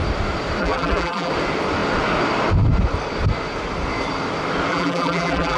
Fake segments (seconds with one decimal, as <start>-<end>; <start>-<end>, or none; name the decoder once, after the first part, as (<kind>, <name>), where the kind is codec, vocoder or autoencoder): 0.6-1.3 (vocoder, BigVGAN v2); 4.7-5.6